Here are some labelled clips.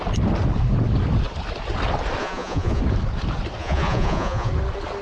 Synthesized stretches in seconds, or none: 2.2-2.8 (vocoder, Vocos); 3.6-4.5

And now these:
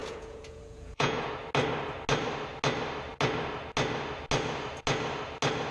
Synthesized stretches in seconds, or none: 0.0-1.3 (vocoder, Vocos)